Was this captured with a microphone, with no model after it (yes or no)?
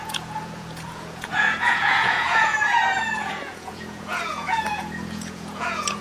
no